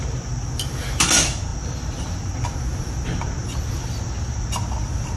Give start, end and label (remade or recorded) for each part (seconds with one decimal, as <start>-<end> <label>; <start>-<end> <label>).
0.0-5.2 recorded